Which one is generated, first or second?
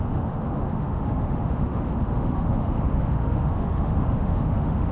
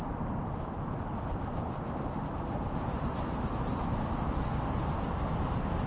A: first